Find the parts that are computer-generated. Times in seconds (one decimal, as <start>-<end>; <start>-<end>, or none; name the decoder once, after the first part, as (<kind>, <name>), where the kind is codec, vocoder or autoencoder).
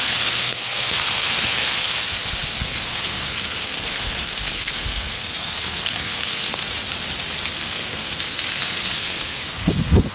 0.0-6.6 (codec, SNAC); 7.5-10.1